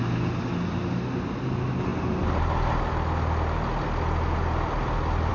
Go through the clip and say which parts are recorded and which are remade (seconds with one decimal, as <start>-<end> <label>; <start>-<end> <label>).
0.0-5.3 recorded